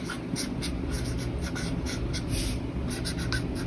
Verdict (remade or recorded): recorded